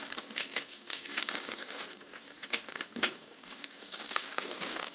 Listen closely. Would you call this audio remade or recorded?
remade